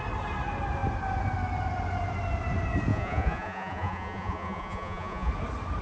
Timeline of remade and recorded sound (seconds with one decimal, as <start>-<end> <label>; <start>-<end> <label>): 0.0-2.9 recorded; 2.9-5.3 remade; 5.3-5.8 recorded